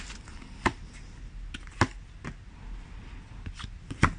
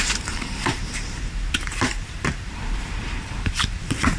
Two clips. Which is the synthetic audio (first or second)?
second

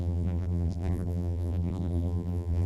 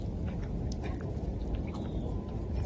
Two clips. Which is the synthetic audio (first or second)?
first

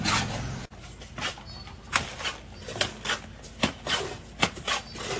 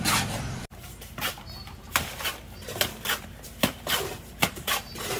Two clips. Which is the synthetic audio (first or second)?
second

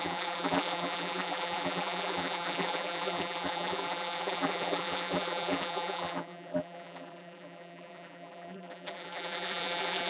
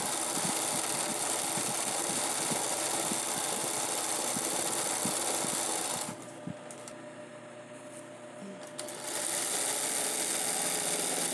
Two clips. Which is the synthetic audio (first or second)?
first